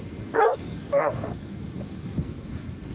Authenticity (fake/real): fake